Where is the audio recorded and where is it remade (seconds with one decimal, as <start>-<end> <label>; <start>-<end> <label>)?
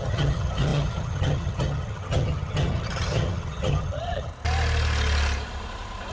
0.0-4.3 remade; 4.3-6.1 recorded